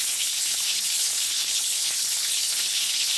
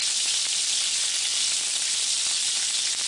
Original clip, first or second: second